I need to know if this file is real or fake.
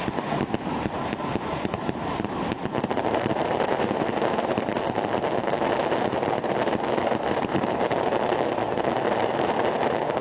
fake